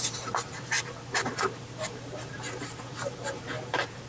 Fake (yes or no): yes